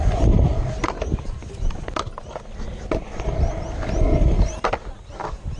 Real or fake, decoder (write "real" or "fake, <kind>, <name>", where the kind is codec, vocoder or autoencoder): real